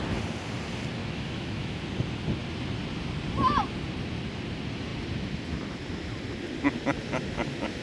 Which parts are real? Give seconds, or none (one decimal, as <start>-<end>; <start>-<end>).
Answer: 0.0-1.0; 1.8-7.8